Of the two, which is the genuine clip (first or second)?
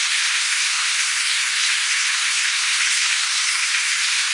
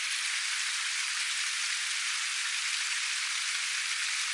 second